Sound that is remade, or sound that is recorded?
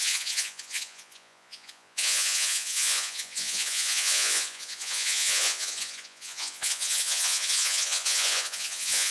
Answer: remade